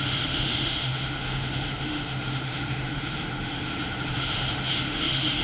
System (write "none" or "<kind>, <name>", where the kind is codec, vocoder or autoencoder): autoencoder, DAC-VAE